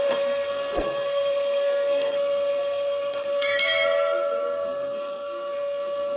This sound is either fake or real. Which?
fake